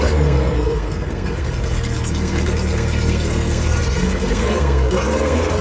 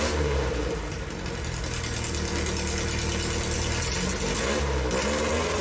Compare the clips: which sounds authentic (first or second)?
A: second